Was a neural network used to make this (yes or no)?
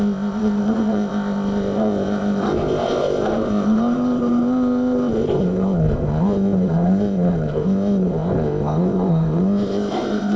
yes